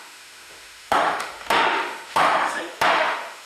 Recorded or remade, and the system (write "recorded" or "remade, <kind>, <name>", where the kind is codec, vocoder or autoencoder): remade, autoencoder, DAC-VAE